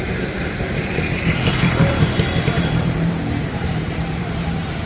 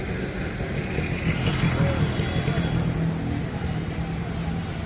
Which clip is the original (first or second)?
second